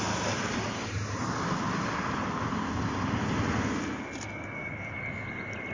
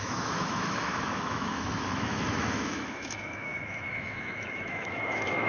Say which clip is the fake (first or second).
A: second